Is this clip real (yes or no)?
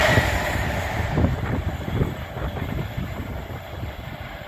no